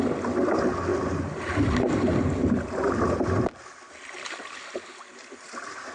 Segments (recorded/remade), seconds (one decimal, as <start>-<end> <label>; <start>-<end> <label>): 0.0-5.9 recorded